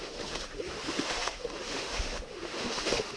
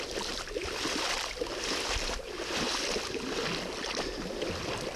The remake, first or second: first